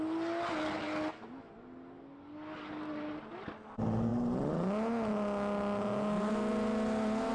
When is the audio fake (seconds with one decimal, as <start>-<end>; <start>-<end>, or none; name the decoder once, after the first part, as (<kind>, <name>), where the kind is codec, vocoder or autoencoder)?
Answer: none